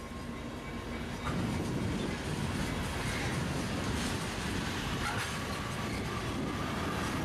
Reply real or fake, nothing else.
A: real